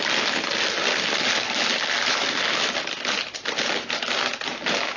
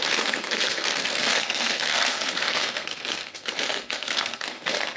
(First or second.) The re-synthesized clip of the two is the second